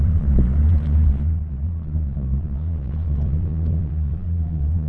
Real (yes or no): no